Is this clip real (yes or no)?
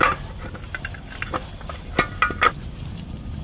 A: yes